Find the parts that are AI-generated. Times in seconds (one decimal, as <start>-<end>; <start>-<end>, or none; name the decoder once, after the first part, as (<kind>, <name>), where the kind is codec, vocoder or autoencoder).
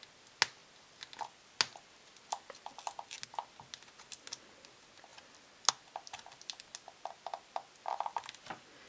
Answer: none